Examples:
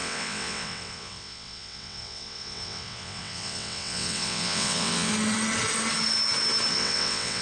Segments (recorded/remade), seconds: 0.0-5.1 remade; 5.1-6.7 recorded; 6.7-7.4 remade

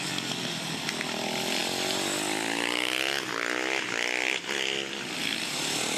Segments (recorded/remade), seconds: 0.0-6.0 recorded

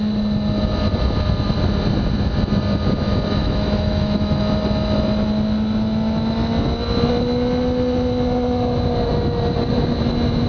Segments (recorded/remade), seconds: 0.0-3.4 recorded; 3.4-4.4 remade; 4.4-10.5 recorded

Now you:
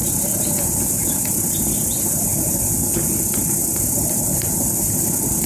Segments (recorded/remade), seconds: 0.0-0.6 remade; 0.6-3.6 recorded; 3.6-4.2 remade; 4.2-5.5 recorded